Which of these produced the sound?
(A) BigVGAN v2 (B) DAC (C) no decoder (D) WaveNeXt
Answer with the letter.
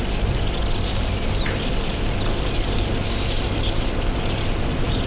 C